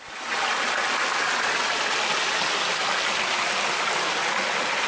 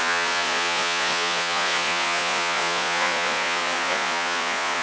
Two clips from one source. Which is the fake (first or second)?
second